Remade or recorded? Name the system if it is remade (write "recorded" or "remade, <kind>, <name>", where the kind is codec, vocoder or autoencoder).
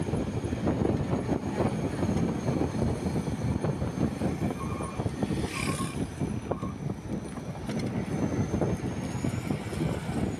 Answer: recorded